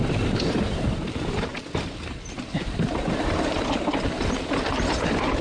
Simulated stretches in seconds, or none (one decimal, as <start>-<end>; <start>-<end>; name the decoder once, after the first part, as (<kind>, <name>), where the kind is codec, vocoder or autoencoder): 0.0-5.4 (vocoder, BigVGAN v2)